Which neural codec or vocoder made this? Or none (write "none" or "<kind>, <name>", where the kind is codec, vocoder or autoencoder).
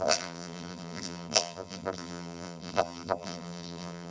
vocoder, BigVGAN v2